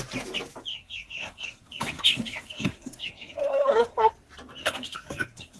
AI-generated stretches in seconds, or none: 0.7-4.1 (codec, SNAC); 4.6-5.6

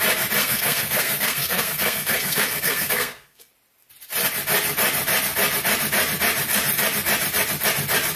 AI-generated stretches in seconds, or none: 0.4-3.5 (codec, SNAC)

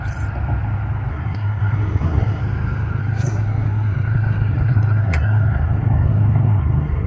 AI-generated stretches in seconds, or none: 1.1-2.4 (codec, SNAC); 3.0-7.1

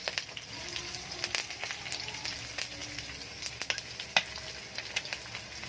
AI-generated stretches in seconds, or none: none

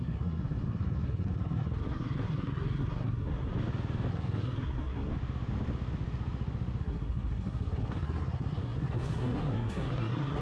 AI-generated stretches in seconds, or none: 0.0-3.5 (codec, SNAC); 4.1-5.1; 6.8-10.4

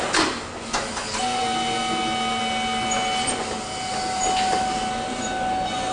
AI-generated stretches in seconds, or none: none